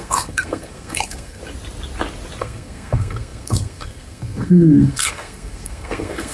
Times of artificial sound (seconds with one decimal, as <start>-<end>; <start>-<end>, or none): 0.0-1.4; 2.4-6.3